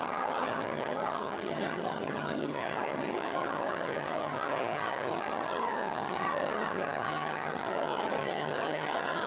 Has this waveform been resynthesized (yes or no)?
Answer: yes